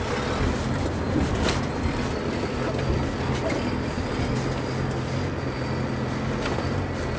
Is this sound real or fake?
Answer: real